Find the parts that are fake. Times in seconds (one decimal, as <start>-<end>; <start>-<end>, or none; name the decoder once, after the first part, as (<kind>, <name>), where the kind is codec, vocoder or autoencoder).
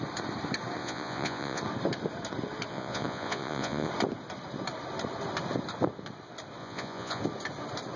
0.8-1.6 (vocoder, Vocos); 2.7-3.9; 6.6-7.2